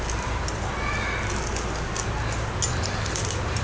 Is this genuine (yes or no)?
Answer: yes